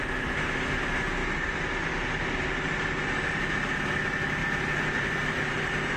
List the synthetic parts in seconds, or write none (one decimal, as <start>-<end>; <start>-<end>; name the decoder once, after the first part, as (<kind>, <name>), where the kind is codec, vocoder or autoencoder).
4.4-5.6 (vocoder, BigVGAN v2)